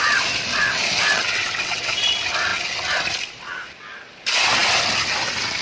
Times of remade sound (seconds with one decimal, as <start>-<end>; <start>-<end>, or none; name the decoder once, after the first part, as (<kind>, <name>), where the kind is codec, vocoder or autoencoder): 1.1-2.0 (vocoder, WaveNeXt)

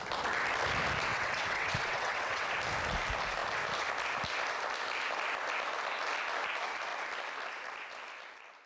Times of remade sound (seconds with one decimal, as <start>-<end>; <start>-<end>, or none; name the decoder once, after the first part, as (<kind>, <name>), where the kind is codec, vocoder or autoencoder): 1.1-2.5 (vocoder, WaveNeXt)

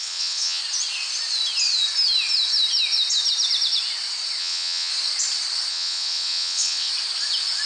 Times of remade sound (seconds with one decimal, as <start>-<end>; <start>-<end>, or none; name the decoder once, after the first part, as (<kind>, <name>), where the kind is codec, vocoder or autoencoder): 0.0-0.6 (vocoder, WaveNeXt); 4.4-4.9; 5.7-6.9

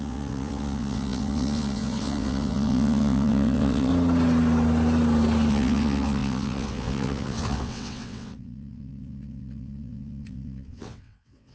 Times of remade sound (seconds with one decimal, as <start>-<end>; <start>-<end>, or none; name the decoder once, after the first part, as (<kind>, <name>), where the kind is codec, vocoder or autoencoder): 0.0-3.9 (vocoder, WaveNeXt); 5.5-11.5

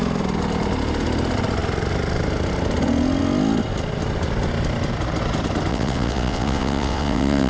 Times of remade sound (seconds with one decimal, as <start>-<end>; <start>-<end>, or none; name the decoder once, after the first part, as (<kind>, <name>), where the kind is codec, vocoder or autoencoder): 5.7-7.5 (vocoder, WaveNeXt)

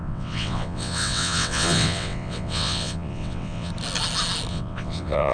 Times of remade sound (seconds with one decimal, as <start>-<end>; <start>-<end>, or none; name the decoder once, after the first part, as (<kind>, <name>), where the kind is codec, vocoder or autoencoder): 0.0-3.7 (vocoder, WaveNeXt); 4.5-5.3

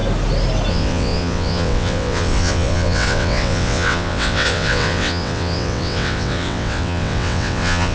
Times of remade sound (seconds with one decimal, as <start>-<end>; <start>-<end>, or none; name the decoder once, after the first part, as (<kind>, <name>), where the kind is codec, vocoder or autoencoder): 0.7-7.9 (vocoder, WaveNeXt)

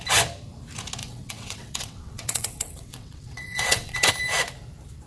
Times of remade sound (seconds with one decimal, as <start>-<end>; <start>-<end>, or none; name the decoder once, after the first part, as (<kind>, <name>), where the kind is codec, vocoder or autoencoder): 1.0-4.1 (vocoder, WaveNeXt)